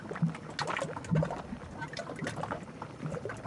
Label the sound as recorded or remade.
recorded